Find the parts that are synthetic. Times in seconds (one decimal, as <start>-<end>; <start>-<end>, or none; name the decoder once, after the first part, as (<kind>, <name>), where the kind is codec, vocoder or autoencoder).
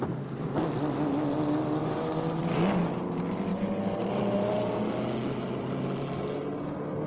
1.8-2.4 (vocoder, BigVGAN v2); 3.5-4.8